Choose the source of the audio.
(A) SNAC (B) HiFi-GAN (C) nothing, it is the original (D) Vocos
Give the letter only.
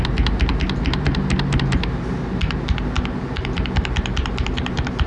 C